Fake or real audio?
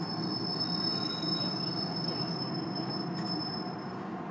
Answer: real